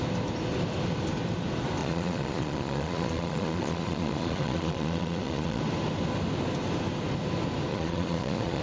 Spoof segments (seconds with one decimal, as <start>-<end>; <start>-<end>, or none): 1.8-5.6; 7.7-8.6